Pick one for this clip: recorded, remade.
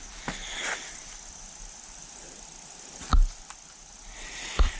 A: recorded